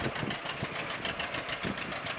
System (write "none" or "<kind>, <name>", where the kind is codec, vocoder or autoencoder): none